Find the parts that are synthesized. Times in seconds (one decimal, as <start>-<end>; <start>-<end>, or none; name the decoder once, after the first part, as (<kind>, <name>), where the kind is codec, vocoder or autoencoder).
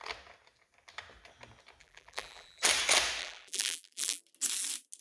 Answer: 1.8-2.6 (vocoder, BigVGAN v2); 3.2-4.2